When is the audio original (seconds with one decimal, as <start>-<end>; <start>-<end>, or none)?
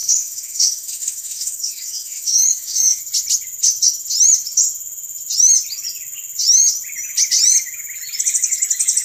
3.0-9.0